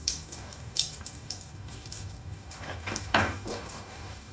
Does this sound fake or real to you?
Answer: fake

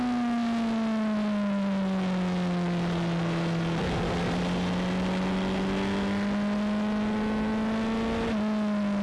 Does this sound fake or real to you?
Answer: real